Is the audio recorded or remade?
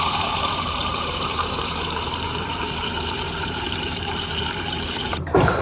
remade